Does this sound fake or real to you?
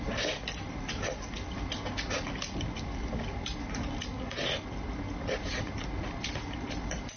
real